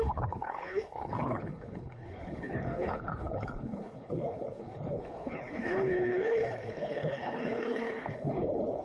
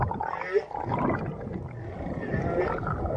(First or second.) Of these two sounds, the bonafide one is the second